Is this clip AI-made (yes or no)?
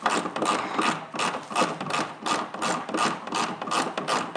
no